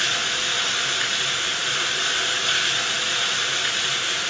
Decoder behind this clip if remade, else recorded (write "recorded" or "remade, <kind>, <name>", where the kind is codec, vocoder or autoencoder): recorded